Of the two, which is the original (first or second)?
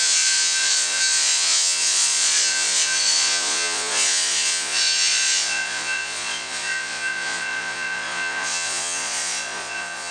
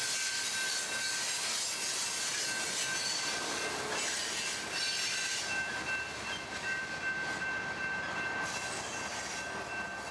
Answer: second